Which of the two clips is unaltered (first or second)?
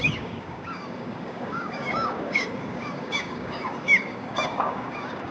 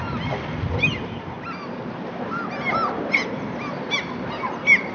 second